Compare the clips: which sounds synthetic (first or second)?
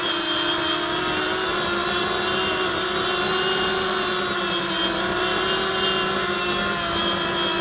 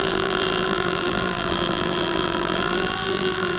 second